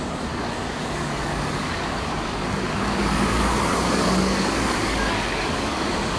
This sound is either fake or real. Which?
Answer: fake